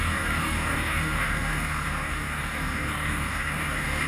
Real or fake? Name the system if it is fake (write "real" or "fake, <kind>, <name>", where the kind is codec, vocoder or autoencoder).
fake, codec, DAC